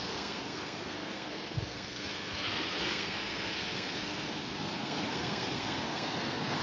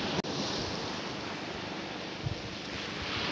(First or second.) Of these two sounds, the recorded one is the second